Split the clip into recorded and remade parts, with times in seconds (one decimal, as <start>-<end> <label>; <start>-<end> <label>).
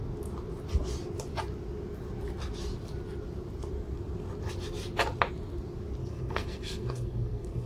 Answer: 0.0-6.0 recorded; 6.0-7.7 remade